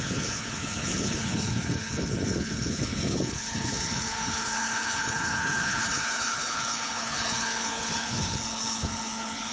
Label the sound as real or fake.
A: fake